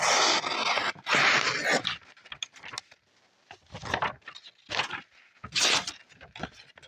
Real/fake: real